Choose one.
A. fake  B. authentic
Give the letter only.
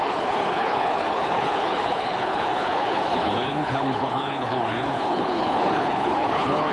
A